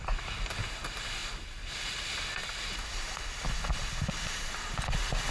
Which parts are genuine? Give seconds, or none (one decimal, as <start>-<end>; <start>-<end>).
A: 0.0-5.3